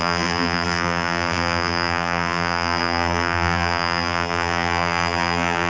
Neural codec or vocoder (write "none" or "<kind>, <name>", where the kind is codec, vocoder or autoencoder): vocoder, BigVGAN v2